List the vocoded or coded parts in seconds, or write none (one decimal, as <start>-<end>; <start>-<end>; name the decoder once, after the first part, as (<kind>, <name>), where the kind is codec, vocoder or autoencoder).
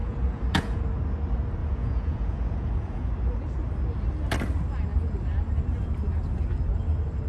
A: 0.0-0.8 (vocoder, Vocos); 1.6-3.1